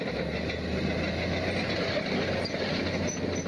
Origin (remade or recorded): recorded